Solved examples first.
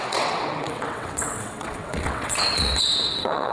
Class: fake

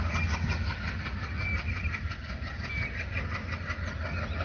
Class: real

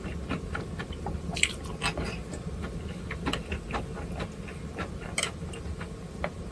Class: real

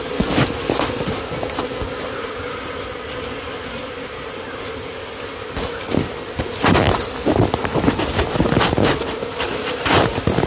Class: real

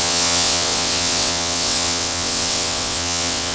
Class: fake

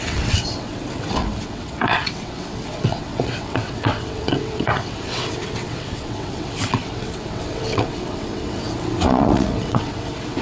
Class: fake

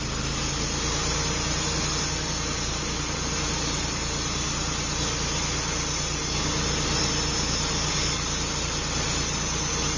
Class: real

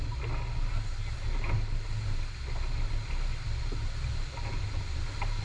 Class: real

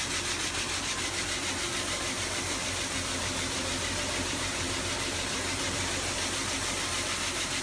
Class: real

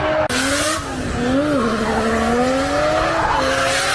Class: real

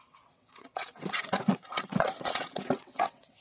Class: fake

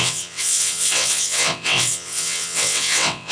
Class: fake